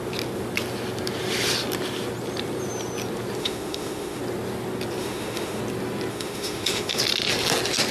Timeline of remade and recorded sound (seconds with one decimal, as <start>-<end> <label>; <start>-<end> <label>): 0.0-3.4 recorded; 3.4-4.2 remade; 4.2-5.0 recorded; 5.0-5.6 remade; 5.6-6.1 recorded; 6.1-7.0 remade; 7.0-7.9 recorded